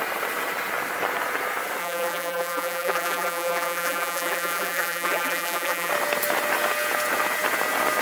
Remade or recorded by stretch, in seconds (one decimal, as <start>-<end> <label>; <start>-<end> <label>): 0.0-1.8 recorded; 1.8-5.9 remade; 5.9-8.0 recorded